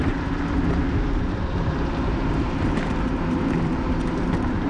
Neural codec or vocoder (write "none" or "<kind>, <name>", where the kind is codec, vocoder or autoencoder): vocoder, BigVGAN v2